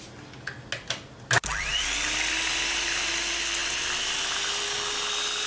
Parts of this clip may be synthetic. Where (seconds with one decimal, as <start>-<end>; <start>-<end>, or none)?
1.5-3.1